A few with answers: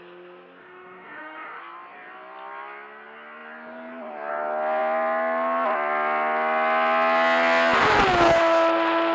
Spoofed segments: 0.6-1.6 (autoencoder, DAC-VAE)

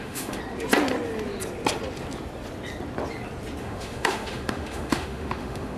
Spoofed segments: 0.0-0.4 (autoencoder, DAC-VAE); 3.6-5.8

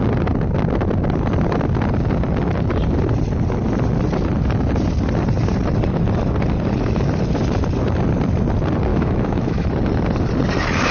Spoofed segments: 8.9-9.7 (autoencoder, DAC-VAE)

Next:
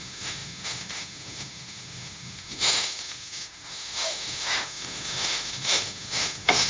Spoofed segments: 0.0-6.7 (autoencoder, DAC-VAE)

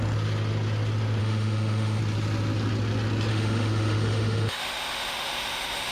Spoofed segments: 1.2-2.0 (autoencoder, DAC-VAE); 3.3-5.9

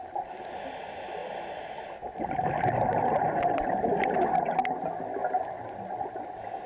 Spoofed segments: none

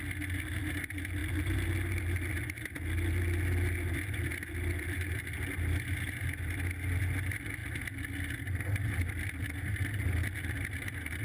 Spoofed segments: none